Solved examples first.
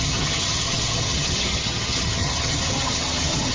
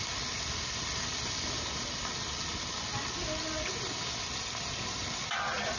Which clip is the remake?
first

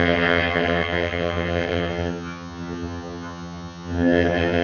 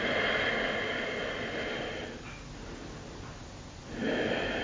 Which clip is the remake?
first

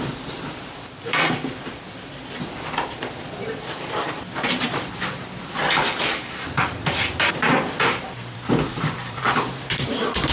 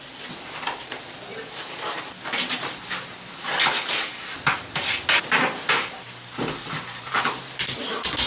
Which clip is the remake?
first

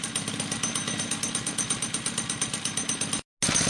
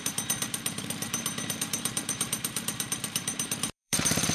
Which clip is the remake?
second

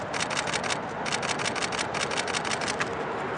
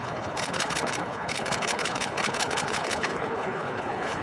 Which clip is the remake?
second